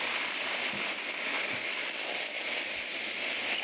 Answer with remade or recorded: recorded